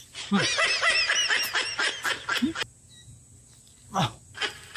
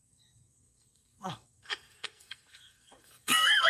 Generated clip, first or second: second